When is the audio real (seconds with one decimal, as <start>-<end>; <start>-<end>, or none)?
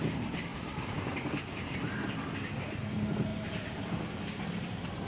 0.0-0.5; 2.3-3.3; 4.0-5.1